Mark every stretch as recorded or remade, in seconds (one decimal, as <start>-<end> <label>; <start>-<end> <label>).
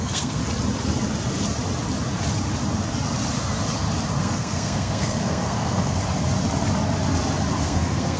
0.0-0.4 remade; 0.4-4.2 recorded; 4.2-6.0 remade; 6.0-7.6 recorded; 7.6-8.2 remade